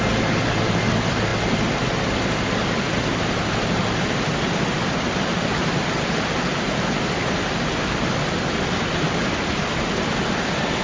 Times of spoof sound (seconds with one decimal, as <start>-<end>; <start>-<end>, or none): none